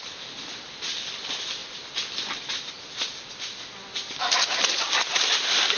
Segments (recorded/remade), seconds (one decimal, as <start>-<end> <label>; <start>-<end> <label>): 0.0-5.8 recorded